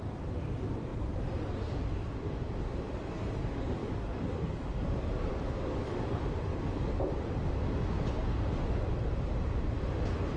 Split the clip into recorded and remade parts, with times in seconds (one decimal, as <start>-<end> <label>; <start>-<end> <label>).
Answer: 0.0-3.8 recorded; 3.8-6.0 remade; 6.0-6.5 recorded; 6.5-7.1 remade; 7.1-10.4 recorded